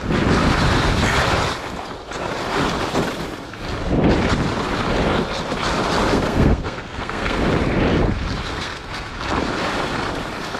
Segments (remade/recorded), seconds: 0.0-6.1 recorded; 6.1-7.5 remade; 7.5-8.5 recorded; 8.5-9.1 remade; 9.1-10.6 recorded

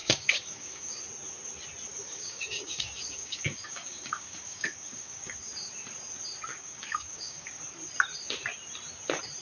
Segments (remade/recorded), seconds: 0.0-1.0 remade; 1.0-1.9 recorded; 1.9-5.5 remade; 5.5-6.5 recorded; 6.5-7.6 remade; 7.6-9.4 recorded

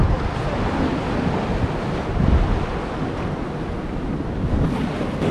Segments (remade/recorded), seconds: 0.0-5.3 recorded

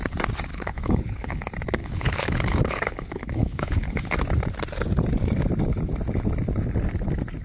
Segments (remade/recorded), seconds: 0.0-0.5 recorded; 0.5-1.4 remade; 1.4-1.8 recorded; 1.8-4.1 remade; 4.1-7.4 recorded

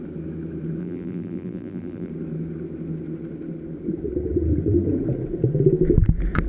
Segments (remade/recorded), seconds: 0.0-0.8 recorded; 0.8-2.1 remade; 2.1-6.5 recorded

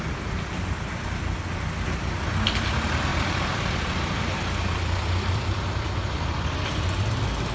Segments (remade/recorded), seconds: 0.0-3.1 recorded; 3.1-7.5 remade

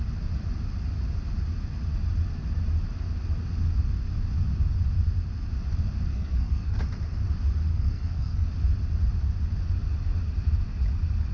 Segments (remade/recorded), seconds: 0.0-6.1 recorded; 6.1-6.8 remade; 6.8-7.7 recorded; 7.7-8.5 remade; 8.5-11.3 recorded

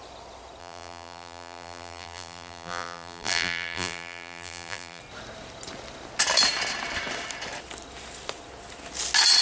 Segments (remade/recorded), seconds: 0.0-0.6 recorded; 0.6-5.0 remade; 5.0-9.4 recorded